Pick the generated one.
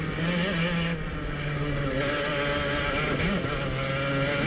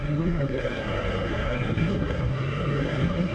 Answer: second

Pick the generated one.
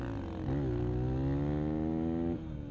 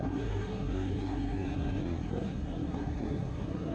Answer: second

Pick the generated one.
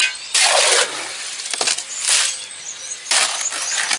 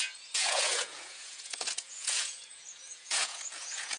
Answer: second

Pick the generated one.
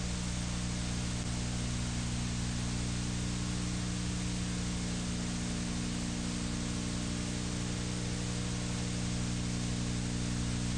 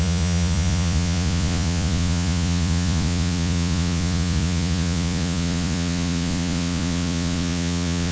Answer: second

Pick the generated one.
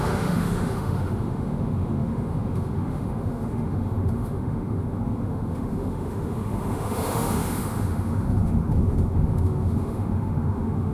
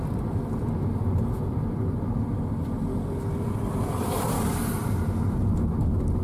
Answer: first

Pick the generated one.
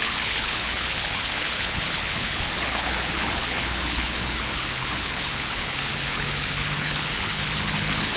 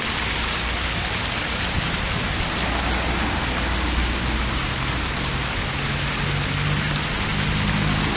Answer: first